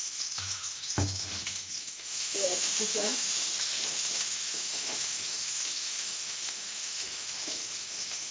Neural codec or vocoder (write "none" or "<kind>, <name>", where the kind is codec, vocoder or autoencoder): autoencoder, DAC-VAE